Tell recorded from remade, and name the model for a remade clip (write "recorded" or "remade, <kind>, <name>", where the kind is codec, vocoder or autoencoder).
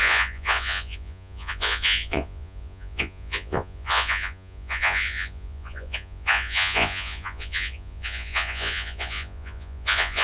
remade, vocoder, Vocos